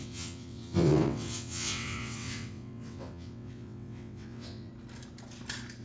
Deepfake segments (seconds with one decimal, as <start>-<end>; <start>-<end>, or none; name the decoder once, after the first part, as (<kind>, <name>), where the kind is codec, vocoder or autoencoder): 0.0-4.7 (vocoder, WaveNeXt)